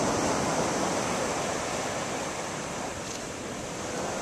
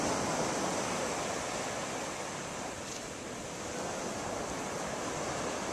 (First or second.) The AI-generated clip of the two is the first